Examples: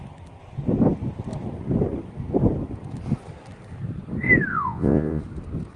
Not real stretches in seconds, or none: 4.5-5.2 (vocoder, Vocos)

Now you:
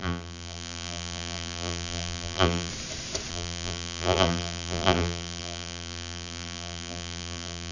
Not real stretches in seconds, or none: 0.0-2.7 (vocoder, BigVGAN v2); 3.3-7.7

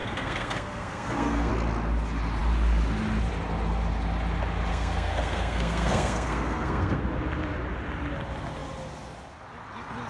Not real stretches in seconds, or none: 0.0-1.5 (codec, SNAC); 4.7-7.0

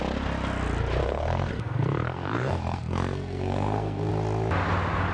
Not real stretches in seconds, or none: 1.0-4.1 (codec, SNAC)

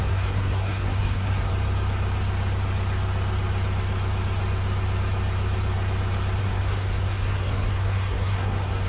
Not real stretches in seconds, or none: 0.0-1.5 (codec, SNAC); 6.4-8.9